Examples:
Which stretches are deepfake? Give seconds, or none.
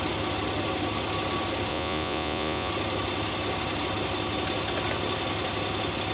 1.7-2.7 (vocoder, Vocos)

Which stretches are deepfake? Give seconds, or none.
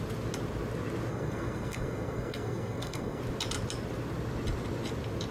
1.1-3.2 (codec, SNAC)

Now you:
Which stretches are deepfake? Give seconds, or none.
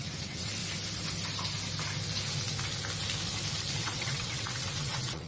0.0-0.6 (vocoder, WaveNeXt); 3.8-5.3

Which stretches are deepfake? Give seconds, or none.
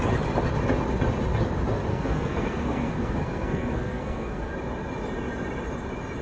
1.9-4.5 (codec, SNAC)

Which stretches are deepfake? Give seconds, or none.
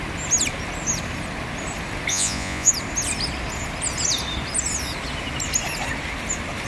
2.1-2.7 (vocoder, Vocos)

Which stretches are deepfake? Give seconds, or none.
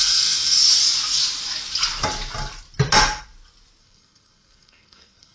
0.0-0.6 (codec, SNAC); 3.8-5.3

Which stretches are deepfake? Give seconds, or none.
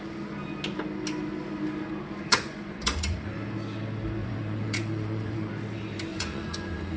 2.3-3.3 (vocoder, Vocos); 4.2-5.5; 6.1-7.0